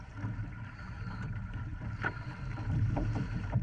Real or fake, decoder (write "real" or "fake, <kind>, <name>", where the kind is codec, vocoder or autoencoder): fake, vocoder, BigVGAN v2